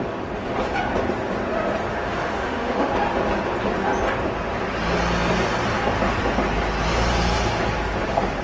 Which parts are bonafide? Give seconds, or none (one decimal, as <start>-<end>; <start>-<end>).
0.0-1.9; 2.9-8.4